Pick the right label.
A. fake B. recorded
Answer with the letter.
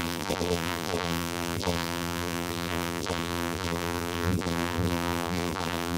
A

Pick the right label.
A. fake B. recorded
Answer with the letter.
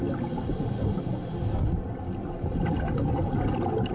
B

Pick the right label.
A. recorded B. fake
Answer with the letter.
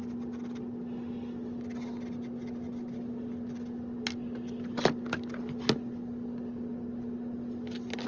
A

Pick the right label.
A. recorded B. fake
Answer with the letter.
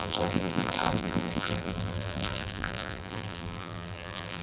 B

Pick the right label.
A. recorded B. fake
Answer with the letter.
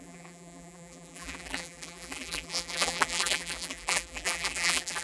B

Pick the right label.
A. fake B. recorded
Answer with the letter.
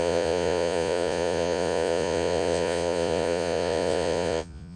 A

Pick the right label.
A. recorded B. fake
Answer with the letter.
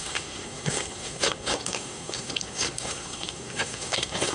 B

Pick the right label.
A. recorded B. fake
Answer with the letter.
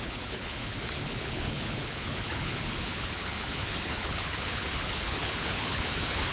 B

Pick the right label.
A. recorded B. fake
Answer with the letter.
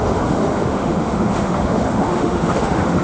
B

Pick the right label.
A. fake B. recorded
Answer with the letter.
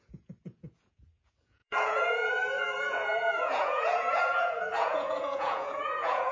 A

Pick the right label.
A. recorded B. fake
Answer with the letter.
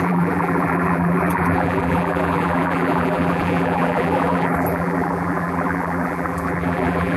B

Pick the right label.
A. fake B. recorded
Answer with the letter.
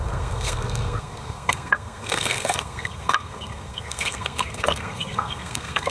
A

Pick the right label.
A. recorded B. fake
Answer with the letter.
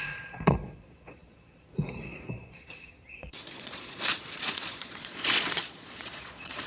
B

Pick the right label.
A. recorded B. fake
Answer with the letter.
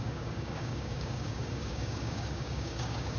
B